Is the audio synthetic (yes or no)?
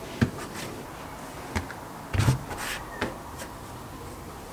no